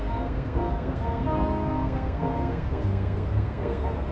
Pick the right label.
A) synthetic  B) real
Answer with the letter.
A